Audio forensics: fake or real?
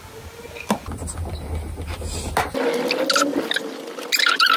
real